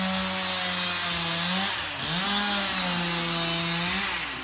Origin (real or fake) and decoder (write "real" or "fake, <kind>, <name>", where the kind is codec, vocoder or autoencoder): real